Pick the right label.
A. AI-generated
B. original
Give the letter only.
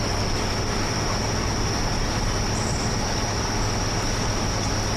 B